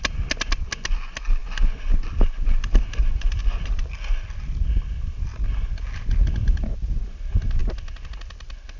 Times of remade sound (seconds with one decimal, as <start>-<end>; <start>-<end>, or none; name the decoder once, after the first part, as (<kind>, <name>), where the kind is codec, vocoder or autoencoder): none